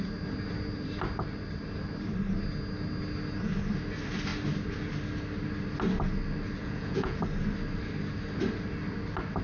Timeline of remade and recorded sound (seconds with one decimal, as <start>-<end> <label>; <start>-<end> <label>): 0.0-6.6 recorded; 6.6-7.2 remade; 7.2-9.4 recorded

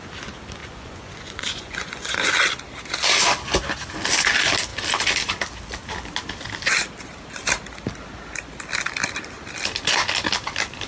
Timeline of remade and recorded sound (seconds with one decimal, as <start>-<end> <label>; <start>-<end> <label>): 0.0-0.6 recorded; 0.6-2.3 remade; 2.3-10.9 recorded